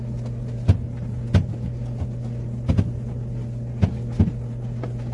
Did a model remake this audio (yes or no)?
no